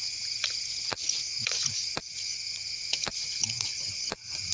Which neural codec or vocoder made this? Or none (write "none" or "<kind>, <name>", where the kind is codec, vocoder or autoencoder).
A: vocoder, Vocos